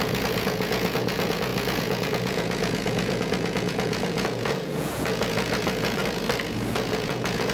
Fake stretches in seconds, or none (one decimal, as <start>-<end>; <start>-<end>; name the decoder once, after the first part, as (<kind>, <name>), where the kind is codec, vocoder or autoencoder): 0.0-6.0 (vocoder, Vocos); 6.7-7.5